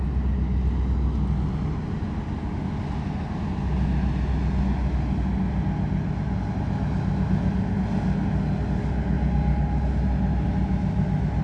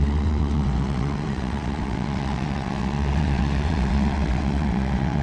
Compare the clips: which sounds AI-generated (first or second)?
second